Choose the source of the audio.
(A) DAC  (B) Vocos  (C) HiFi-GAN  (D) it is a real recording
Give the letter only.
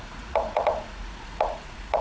B